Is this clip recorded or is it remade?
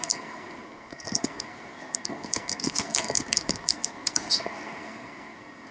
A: remade